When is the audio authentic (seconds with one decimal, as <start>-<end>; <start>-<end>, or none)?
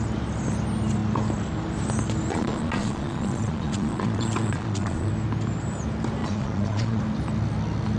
0.0-2.3; 5.1-6.2; 7.0-8.0